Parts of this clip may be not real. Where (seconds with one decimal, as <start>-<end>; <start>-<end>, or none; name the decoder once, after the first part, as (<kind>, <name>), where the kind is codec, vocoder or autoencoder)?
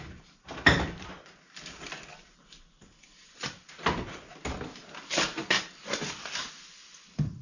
none